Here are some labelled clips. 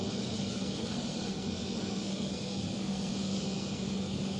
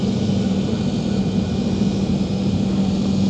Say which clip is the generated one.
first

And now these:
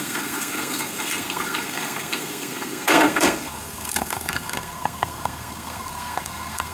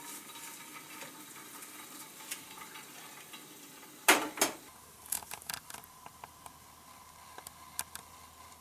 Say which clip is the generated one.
first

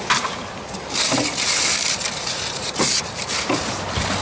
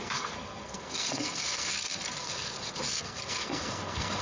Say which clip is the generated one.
second